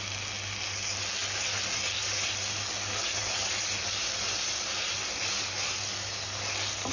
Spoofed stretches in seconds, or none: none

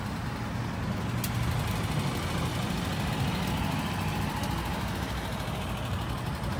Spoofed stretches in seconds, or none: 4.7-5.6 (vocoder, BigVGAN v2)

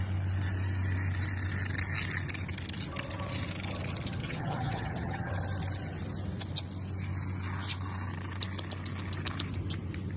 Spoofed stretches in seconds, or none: 4.2-5.3 (vocoder, HiFi-GAN)

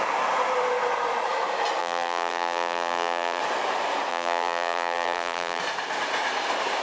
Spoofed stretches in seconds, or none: 1.8-3.4 (vocoder, BigVGAN v2); 4.1-5.6

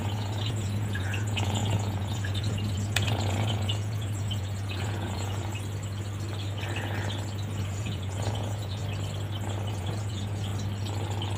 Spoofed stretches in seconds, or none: 0.0-5.5 (vocoder, Vocos); 7.6-8.8; 9.7-10.5

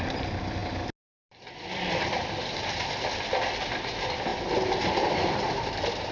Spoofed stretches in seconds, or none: 0.0-0.6 (vocoder, BigVGAN v2); 1.2-6.1

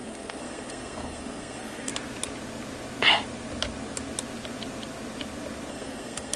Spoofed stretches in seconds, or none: 0.0-1.9 (codec, SNAC); 5.7-6.4